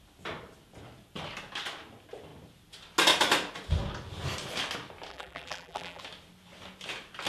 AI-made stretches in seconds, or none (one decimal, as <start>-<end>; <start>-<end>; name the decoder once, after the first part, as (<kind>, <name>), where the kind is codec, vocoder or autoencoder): 5.1-6.0 (vocoder, BigVGAN v2)